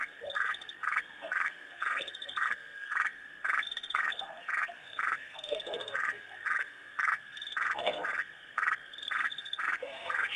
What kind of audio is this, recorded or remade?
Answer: remade